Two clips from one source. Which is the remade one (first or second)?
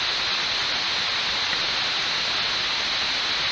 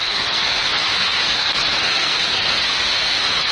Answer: second